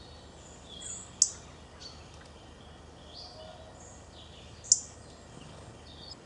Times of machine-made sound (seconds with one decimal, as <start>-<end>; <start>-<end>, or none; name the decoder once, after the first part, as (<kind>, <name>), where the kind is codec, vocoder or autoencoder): none